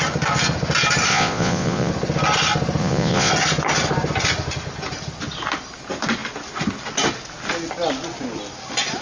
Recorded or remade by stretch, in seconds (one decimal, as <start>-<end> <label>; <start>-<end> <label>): 0.0-1.1 recorded; 1.1-1.9 remade; 1.9-2.8 recorded; 2.8-3.3 remade; 3.3-9.0 recorded